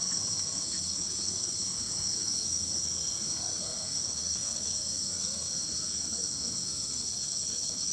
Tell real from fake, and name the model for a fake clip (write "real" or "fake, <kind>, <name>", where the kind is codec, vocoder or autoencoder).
fake, codec, SNAC